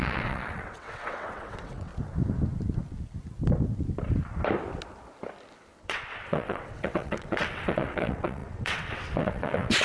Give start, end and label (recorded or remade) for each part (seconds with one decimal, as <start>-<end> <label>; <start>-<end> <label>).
0.0-1.9 remade; 1.9-5.8 recorded; 5.8-9.8 remade